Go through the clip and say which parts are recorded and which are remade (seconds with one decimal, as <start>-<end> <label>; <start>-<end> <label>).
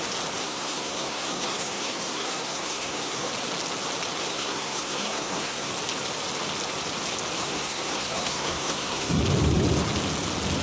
0.0-0.4 recorded; 0.4-3.3 remade; 3.3-4.2 recorded; 4.2-5.7 remade; 5.7-7.4 recorded; 7.4-9.2 remade; 9.2-10.6 recorded